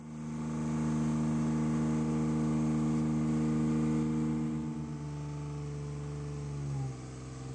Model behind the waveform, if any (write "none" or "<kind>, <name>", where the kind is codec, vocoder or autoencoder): none